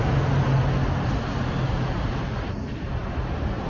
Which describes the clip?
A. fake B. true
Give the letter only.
B